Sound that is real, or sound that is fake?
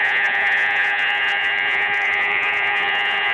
fake